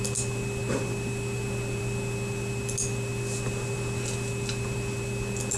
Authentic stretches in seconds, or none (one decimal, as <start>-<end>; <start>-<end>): 0.0-5.6